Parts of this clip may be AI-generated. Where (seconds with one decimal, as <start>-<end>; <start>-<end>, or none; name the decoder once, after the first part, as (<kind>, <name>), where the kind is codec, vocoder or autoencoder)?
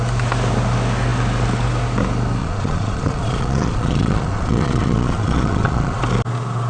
2.4-6.0 (vocoder, Vocos)